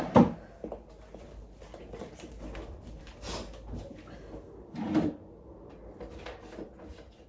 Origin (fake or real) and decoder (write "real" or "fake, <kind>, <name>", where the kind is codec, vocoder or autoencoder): real